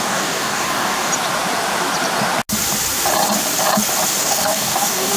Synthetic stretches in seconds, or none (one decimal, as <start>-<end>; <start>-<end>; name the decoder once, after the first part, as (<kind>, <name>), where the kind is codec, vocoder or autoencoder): 0.0-1.1 (codec, DAC); 4.2-5.2